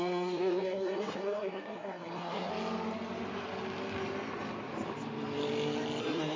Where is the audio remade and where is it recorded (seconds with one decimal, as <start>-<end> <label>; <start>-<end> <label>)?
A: 0.0-2.5 remade; 2.5-6.0 recorded; 6.0-6.4 remade